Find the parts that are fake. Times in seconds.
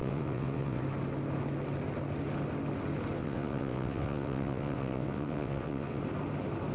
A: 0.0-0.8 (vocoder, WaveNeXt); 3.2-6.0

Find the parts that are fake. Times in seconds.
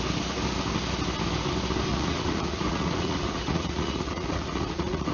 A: 1.9-5.1 (vocoder, Vocos)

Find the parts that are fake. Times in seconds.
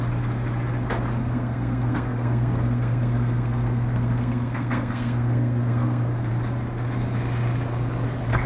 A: 1.2-6.3 (codec, SNAC)